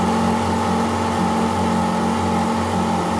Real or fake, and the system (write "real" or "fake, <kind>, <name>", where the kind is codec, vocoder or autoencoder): real